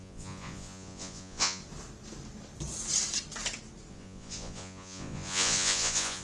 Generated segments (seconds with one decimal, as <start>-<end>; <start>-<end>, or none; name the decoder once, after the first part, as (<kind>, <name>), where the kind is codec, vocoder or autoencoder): 0.0-1.6 (vocoder, Vocos); 3.9-6.2